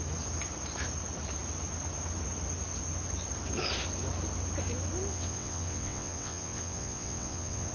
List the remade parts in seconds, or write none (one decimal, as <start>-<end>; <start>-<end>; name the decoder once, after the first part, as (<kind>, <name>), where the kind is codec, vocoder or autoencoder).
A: 5.1-7.7 (vocoder, WaveNeXt)